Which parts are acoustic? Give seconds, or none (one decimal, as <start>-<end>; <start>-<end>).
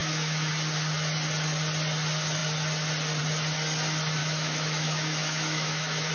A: 0.5-4.2